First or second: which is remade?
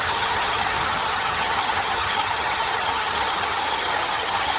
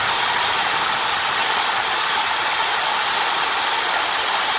first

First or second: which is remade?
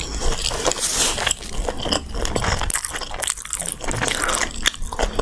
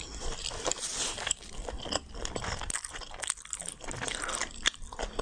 second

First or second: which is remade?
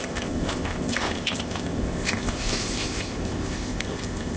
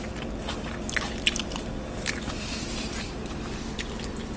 first